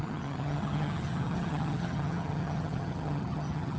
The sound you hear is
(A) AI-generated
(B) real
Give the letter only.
A